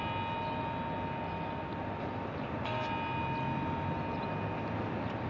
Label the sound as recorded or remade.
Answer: recorded